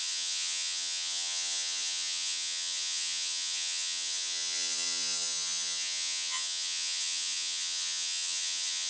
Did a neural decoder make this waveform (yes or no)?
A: yes